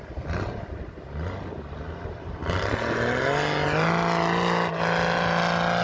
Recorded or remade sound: recorded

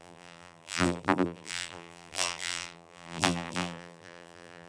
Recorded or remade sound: remade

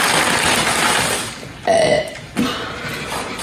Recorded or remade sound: recorded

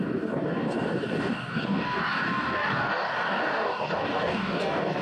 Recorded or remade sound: remade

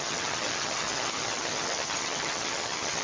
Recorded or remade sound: remade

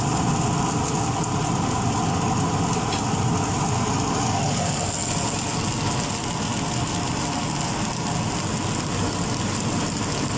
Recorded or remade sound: recorded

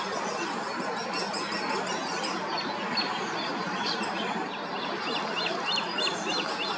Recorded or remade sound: recorded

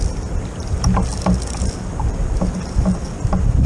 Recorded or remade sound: recorded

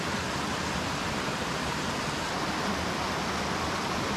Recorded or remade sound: recorded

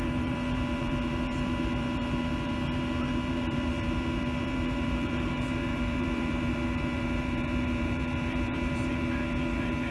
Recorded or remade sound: remade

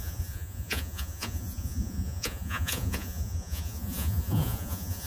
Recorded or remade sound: remade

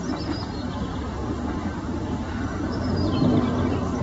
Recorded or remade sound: recorded